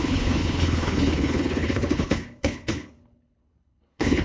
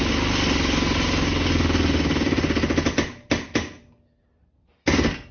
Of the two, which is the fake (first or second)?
first